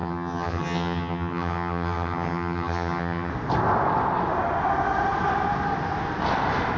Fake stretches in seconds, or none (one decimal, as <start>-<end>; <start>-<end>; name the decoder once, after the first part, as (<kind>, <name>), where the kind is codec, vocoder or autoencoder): 0.0-3.3 (vocoder, HiFi-GAN)